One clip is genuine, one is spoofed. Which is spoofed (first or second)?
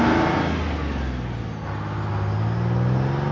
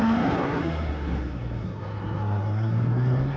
second